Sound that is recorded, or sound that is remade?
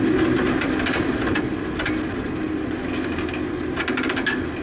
recorded